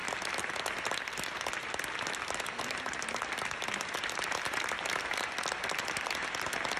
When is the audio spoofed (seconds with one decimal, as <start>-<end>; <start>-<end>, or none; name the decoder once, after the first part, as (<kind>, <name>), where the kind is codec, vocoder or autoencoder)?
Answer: none